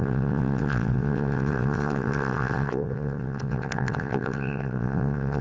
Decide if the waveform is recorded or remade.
remade